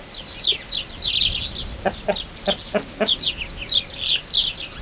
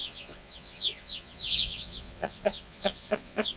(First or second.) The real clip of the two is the first